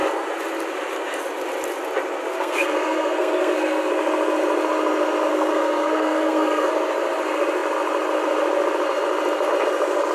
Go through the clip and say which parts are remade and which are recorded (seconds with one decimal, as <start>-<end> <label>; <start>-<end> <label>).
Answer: 0.0-2.3 recorded; 2.3-3.9 remade; 3.9-5.3 recorded; 5.3-6.7 remade; 6.7-10.1 recorded